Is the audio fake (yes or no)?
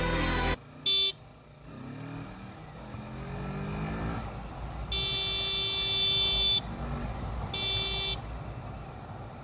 no